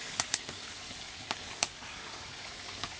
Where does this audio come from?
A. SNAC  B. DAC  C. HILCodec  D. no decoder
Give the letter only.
B